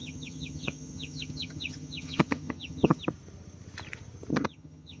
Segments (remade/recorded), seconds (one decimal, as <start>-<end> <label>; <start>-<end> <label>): 0.0-3.0 remade; 3.0-4.3 recorded; 4.3-5.0 remade